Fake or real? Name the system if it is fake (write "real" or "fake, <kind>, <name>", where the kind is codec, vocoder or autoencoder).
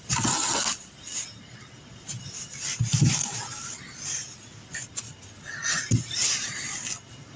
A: real